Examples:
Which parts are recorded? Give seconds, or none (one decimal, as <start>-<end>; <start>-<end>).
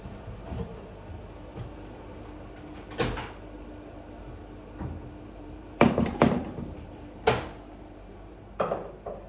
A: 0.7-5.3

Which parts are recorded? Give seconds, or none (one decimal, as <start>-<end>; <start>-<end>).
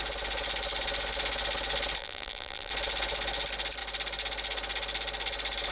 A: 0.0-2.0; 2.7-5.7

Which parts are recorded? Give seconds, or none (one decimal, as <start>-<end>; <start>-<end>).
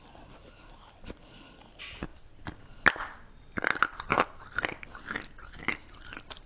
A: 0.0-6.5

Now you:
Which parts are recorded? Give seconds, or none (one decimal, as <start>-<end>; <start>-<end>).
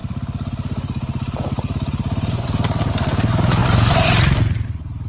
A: 2.9-3.6